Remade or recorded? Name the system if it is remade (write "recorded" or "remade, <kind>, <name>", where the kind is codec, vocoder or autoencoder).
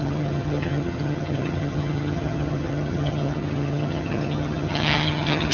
remade, vocoder, HiFi-GAN